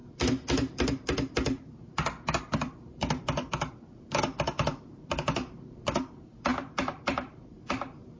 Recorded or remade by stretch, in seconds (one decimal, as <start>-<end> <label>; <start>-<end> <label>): 0.0-8.2 remade